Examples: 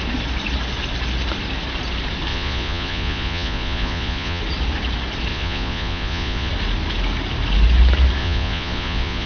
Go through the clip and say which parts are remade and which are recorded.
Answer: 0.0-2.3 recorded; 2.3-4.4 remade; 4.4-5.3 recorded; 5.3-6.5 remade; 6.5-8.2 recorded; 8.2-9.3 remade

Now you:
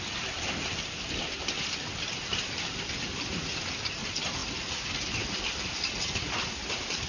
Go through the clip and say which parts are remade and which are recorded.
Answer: 0.0-7.1 recorded

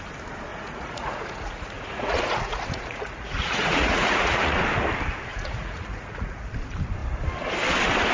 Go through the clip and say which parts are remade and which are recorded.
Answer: 0.0-0.5 recorded; 0.5-4.6 remade; 4.6-5.3 recorded; 5.3-6.5 remade; 6.5-8.1 recorded

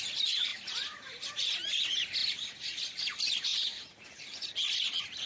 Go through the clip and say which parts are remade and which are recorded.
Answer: 0.0-0.5 recorded; 0.5-1.3 remade; 1.3-3.5 recorded; 3.5-4.5 remade; 4.5-5.3 recorded